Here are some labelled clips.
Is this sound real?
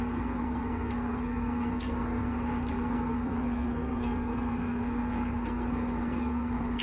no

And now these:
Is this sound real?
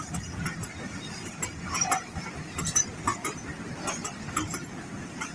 yes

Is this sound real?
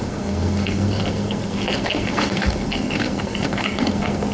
no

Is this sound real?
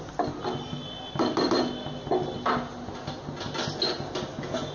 yes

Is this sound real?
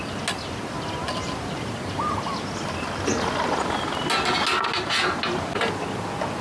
yes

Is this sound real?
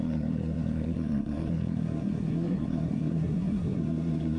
no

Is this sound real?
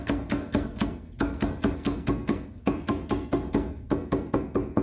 no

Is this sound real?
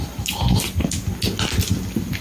yes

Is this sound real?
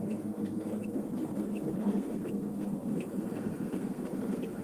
no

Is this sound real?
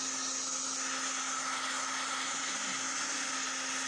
yes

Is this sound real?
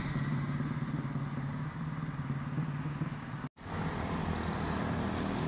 yes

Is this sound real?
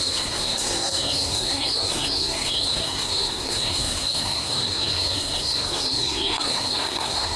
no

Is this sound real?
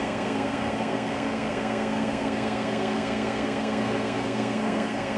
no